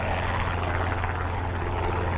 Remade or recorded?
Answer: recorded